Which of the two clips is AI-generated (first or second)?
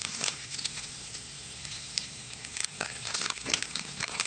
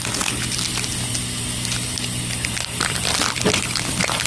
first